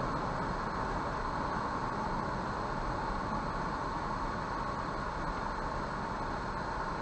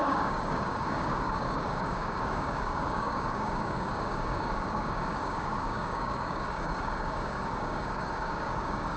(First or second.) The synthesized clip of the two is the second